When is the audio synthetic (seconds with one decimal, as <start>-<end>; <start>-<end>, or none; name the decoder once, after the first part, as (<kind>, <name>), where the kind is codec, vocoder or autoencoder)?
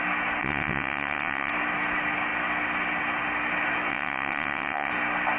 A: 0.4-1.5 (vocoder, WaveNeXt); 3.9-4.9